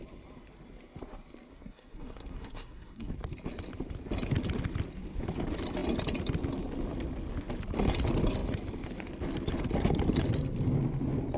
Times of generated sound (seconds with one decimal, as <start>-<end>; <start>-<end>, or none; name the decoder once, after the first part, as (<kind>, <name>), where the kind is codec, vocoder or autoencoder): 1.5-3.1 (codec, SNAC)